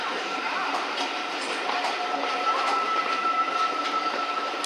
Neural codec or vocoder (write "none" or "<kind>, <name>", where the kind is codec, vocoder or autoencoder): vocoder, BigVGAN v2